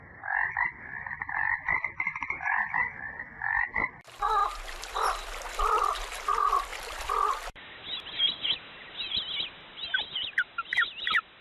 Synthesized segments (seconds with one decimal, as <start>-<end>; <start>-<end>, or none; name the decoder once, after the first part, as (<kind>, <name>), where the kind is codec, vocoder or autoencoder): 6.7-7.6 (vocoder, BigVGAN v2)

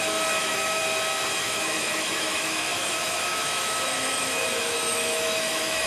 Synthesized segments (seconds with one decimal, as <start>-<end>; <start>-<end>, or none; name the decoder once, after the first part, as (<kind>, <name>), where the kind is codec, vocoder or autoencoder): 0.0-0.8 (autoencoder, DAC-VAE); 1.4-5.9

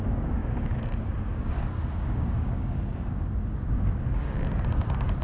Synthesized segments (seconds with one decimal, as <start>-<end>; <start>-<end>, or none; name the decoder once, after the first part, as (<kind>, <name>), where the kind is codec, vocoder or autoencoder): 0.0-5.2 (codec, DAC)

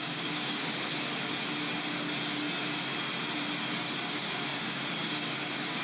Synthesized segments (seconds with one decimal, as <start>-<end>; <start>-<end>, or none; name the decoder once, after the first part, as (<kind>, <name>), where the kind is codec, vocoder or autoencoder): 0.0-0.9 (codec, DAC); 4.0-5.8

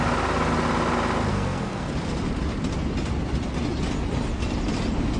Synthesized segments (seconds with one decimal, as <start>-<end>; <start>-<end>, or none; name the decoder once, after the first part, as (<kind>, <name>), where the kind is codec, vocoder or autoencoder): 1.3-1.9 (codec, SNAC)

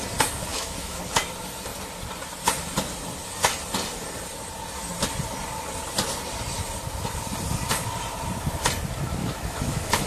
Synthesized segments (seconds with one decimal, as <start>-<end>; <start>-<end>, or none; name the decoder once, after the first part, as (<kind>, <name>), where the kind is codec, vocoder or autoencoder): 0.5-1.0 (autoencoder, DAC-VAE); 9.2-10.1